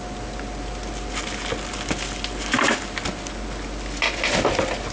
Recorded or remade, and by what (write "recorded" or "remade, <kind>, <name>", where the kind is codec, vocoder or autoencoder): recorded